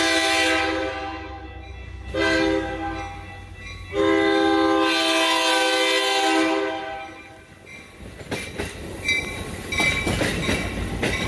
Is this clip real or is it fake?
real